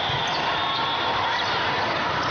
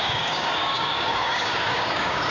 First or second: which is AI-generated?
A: second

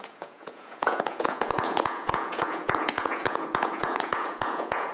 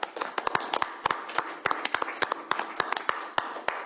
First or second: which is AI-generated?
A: first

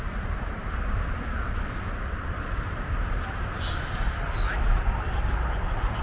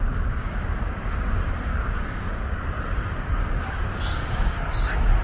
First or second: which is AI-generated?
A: second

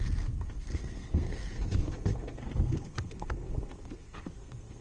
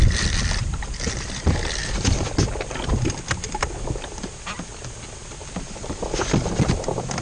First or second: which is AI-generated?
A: first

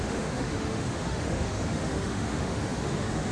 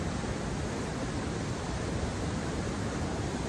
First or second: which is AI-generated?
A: first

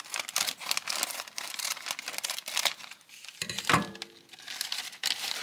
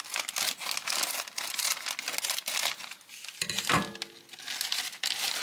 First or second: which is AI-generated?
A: first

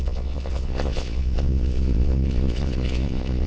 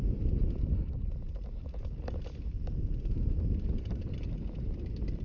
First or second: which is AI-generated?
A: first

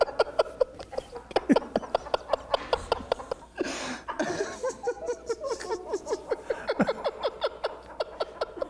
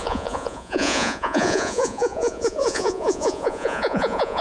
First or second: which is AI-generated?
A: second